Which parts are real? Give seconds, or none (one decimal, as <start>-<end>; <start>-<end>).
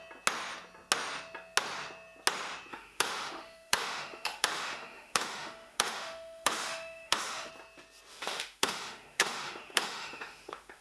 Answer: 0.0-2.7; 7.5-8.1